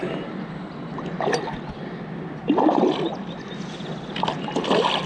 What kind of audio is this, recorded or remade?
recorded